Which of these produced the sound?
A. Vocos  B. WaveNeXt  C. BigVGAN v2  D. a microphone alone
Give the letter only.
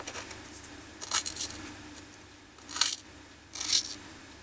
D